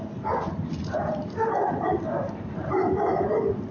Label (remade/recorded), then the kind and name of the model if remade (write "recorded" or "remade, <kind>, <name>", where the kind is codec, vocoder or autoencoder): recorded